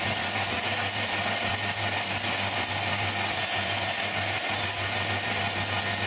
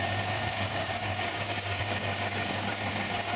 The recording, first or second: first